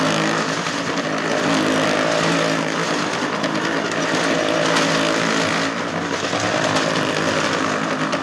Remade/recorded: recorded